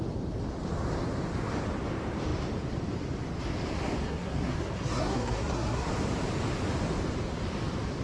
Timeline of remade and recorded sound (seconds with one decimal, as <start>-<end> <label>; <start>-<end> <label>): 0.0-4.0 recorded; 4.0-5.9 remade; 5.9-8.0 recorded